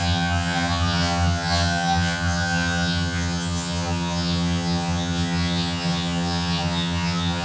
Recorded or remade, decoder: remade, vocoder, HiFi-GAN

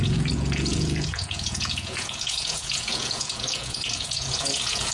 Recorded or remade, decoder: remade, vocoder, Vocos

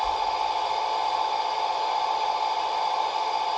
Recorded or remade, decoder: recorded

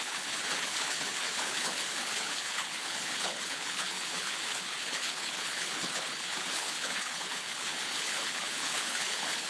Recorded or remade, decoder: remade, codec, HILCodec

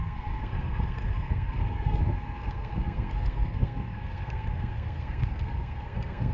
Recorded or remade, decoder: remade, codec, SNAC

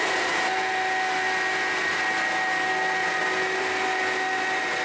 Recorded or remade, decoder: recorded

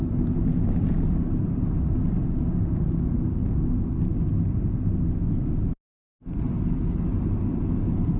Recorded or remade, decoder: recorded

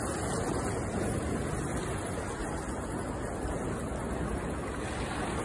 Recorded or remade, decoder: recorded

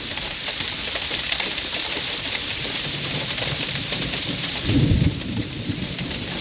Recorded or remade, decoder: remade, vocoder, BigVGAN v2